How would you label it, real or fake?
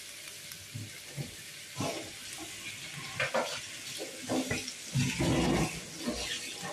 real